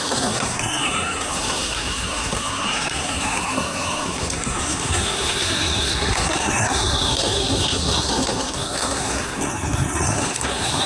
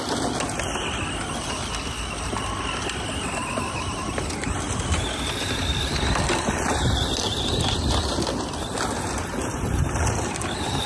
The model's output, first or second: first